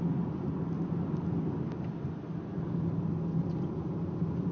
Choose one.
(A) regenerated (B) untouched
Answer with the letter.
B